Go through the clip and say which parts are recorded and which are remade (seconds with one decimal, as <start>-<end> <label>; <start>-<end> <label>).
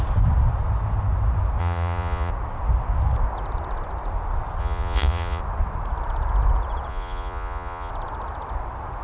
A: 0.0-1.6 recorded; 1.6-2.3 remade; 2.3-4.6 recorded; 4.6-5.4 remade; 5.4-6.9 recorded; 6.9-7.9 remade; 7.9-9.0 recorded